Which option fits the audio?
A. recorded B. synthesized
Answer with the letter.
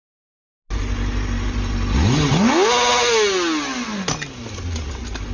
A